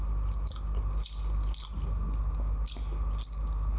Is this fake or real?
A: real